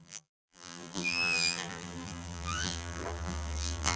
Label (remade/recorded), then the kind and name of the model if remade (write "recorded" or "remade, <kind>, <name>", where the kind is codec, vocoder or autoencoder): remade, vocoder, BigVGAN v2